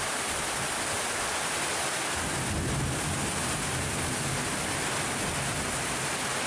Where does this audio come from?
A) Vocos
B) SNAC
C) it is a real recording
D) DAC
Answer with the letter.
C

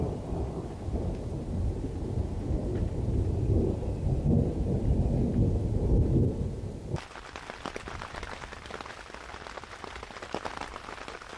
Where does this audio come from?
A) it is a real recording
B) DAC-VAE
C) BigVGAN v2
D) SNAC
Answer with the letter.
A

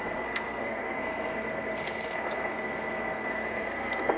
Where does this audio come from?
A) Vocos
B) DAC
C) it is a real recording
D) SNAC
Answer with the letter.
D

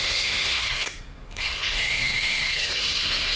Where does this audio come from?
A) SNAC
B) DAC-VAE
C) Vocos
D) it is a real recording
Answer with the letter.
A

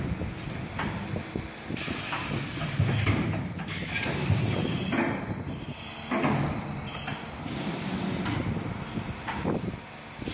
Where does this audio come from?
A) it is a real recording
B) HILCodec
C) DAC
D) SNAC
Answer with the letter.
A